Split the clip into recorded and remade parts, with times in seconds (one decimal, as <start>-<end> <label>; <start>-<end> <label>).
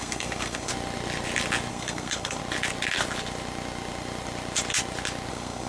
0.0-0.7 remade; 0.7-1.7 recorded; 1.7-2.4 remade; 2.4-5.3 recorded; 5.3-5.7 remade